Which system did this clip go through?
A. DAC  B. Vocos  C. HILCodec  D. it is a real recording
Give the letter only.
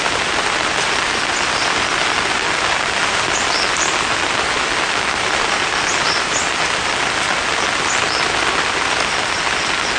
D